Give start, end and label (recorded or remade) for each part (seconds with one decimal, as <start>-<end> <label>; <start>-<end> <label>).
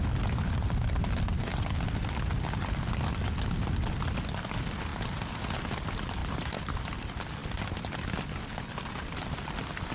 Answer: 0.0-4.9 recorded; 4.9-5.6 remade; 5.6-6.2 recorded; 6.2-6.9 remade; 6.9-9.9 recorded